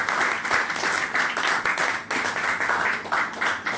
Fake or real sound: real